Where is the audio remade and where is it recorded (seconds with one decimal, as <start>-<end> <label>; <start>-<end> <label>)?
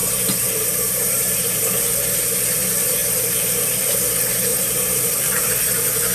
0.0-1.6 remade; 1.6-3.0 recorded; 3.0-3.8 remade; 3.8-4.5 recorded; 4.5-5.5 remade; 5.5-6.1 recorded